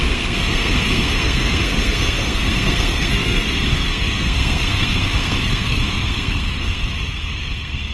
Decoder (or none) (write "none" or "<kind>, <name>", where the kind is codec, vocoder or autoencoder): codec, SNAC